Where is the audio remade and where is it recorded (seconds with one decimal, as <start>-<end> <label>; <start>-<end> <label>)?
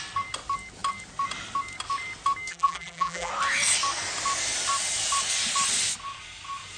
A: 0.0-2.5 recorded; 2.5-3.3 remade; 3.3-6.8 recorded